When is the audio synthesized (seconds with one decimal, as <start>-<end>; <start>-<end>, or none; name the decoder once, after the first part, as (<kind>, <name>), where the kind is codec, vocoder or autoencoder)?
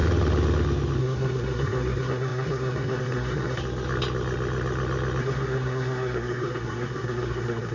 1.0-3.6 (codec, SNAC); 5.2-7.7